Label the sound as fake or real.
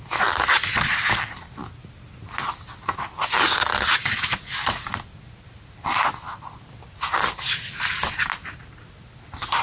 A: real